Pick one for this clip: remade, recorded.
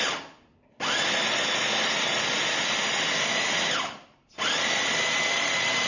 recorded